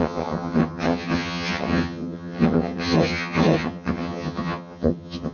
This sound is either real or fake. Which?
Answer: fake